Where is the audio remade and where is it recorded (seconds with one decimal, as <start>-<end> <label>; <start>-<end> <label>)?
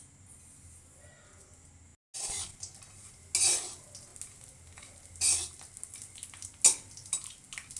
0.0-7.8 recorded